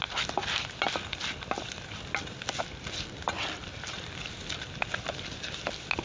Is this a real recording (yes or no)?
yes